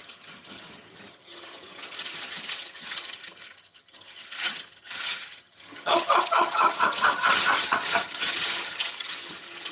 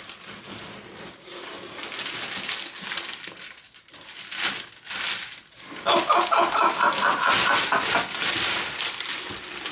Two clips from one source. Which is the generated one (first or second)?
first